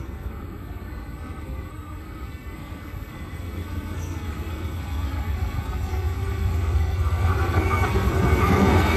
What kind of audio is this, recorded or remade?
remade